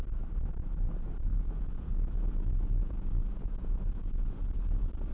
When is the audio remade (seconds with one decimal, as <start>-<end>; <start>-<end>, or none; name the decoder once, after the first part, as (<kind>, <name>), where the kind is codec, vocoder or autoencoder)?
1.3-4.4 (vocoder, Vocos)